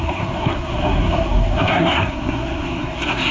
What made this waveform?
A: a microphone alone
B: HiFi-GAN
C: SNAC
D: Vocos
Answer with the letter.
C